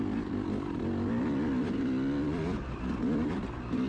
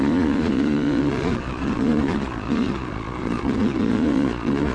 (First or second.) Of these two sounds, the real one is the first